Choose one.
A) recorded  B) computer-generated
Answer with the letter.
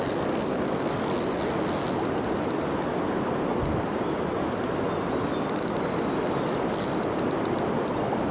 A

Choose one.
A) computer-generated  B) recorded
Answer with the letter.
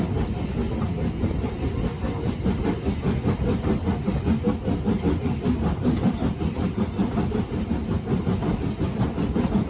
B